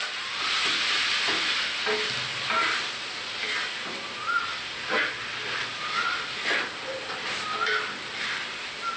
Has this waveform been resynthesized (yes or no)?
no